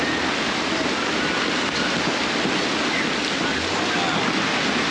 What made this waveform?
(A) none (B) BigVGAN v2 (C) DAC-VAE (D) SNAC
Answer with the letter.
A